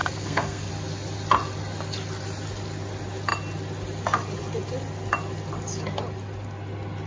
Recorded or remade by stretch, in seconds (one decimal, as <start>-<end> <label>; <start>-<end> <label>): 0.0-0.7 remade; 0.7-7.1 recorded